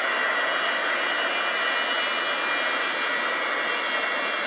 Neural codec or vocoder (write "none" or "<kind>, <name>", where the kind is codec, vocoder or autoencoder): none